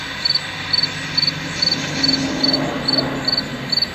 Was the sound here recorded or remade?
recorded